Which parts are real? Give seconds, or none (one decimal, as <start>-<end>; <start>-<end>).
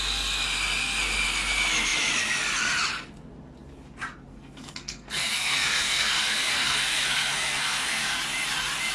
0.0-4.3; 8.2-8.9